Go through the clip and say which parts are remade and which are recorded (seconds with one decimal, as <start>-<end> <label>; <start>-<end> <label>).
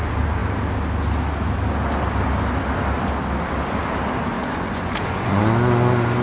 0.0-4.4 recorded; 4.4-5.4 remade; 5.4-6.2 recorded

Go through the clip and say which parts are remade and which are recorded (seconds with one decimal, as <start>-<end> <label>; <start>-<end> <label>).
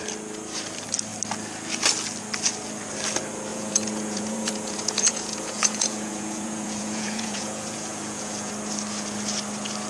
0.0-3.5 recorded; 3.5-8.5 remade; 8.5-9.9 recorded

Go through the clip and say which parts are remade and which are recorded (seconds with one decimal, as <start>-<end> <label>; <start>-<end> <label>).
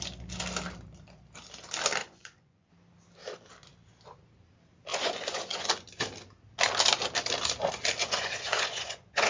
0.0-2.0 recorded; 2.0-2.7 remade; 2.7-4.9 recorded; 4.9-5.7 remade; 5.7-8.0 recorded; 8.0-9.3 remade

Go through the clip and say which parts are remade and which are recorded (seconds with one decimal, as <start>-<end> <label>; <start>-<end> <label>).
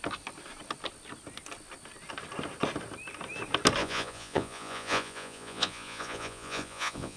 0.0-3.8 recorded; 3.8-7.2 remade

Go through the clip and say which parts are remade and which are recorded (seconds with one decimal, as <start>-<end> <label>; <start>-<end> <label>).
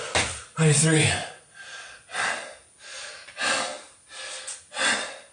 0.0-5.3 recorded